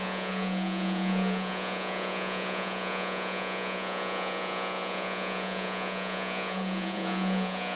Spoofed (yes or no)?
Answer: yes